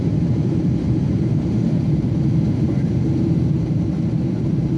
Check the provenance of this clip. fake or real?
fake